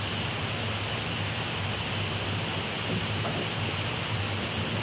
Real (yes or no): yes